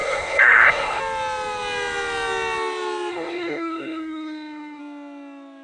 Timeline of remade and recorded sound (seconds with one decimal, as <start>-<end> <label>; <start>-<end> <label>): 0.0-1.0 remade; 1.0-3.1 recorded; 3.1-4.8 remade; 4.8-5.6 recorded